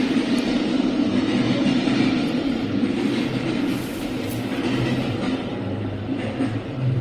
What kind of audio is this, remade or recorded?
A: remade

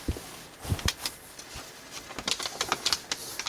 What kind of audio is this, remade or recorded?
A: recorded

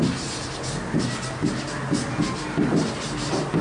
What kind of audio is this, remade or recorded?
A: recorded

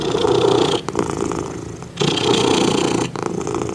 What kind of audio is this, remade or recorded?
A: recorded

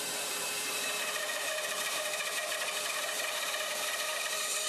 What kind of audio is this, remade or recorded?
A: remade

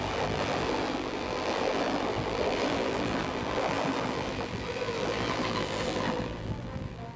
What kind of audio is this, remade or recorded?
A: remade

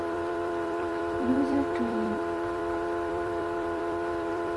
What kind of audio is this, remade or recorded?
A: remade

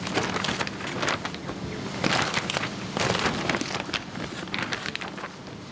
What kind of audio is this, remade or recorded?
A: recorded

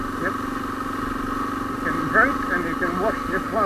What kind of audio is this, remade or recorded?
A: recorded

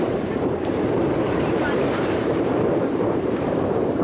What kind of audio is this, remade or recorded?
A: remade